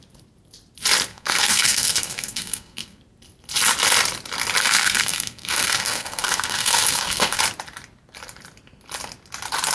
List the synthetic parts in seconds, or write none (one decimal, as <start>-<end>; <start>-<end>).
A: 1.1-3.0; 4.6-7.4